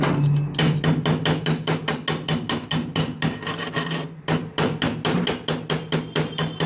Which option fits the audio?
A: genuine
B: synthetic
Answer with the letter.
A